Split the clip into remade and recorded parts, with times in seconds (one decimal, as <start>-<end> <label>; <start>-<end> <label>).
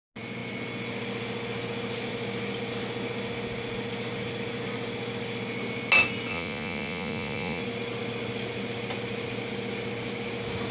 0.0-6.3 recorded; 6.3-7.6 remade; 7.6-10.7 recorded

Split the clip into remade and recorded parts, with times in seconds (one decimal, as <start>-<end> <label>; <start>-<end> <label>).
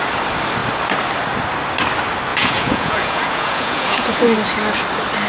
0.0-2.3 recorded; 2.3-4.2 remade; 4.2-5.3 recorded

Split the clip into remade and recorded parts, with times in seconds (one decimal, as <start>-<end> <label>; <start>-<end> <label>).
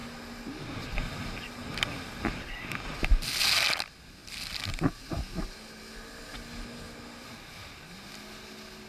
0.0-8.9 recorded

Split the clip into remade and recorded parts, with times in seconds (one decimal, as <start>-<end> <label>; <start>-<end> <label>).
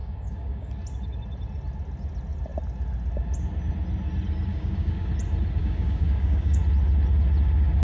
0.0-0.7 remade; 0.7-4.5 recorded; 4.5-5.1 remade; 5.1-5.6 recorded; 5.6-6.6 remade; 6.6-7.8 recorded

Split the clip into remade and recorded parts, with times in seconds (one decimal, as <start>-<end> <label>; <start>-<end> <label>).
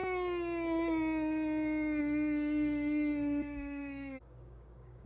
0.0-2.0 recorded; 2.0-5.1 remade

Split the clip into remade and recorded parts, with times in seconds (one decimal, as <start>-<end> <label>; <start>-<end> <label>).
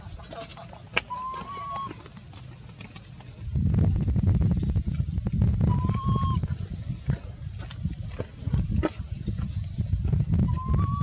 0.0-11.0 recorded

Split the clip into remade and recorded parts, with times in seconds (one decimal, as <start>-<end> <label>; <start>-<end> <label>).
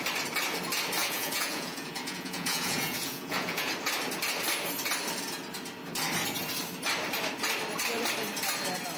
0.0-1.0 recorded; 1.0-3.7 remade; 3.7-9.0 recorded